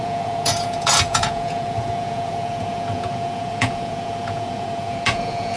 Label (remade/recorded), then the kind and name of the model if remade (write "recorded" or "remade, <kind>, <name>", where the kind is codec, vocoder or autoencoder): remade, vocoder, Vocos